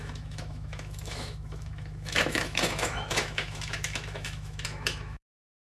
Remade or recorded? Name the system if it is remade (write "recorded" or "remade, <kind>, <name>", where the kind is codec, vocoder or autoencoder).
remade, autoencoder, DAC-VAE